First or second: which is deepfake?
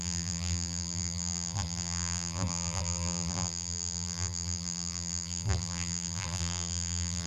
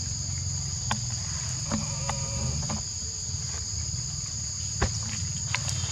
first